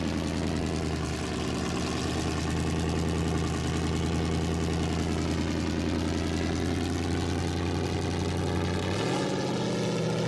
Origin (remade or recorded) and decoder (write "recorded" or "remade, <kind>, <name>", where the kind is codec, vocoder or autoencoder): recorded